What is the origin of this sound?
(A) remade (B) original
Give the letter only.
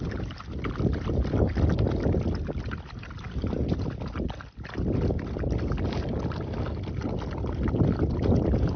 B